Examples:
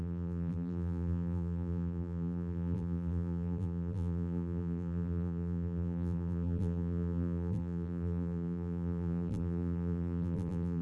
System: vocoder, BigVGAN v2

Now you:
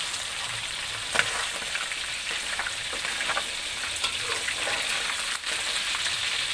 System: vocoder, BigVGAN v2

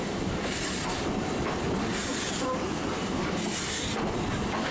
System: none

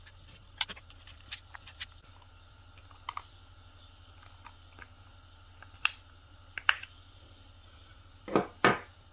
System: vocoder, BigVGAN v2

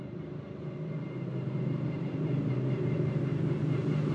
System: vocoder, BigVGAN v2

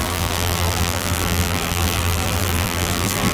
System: vocoder, BigVGAN v2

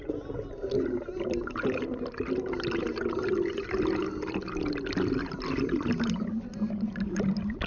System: none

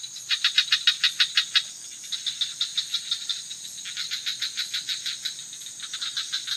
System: vocoder, BigVGAN v2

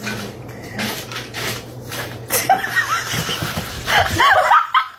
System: vocoder, BigVGAN v2